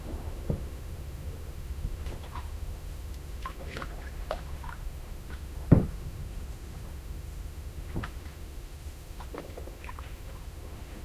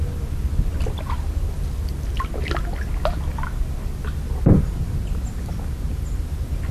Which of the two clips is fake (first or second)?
first